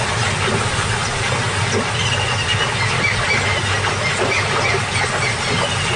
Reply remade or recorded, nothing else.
recorded